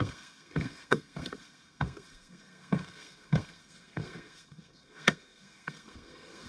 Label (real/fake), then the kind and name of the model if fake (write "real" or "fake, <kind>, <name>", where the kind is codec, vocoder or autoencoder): fake, codec, SNAC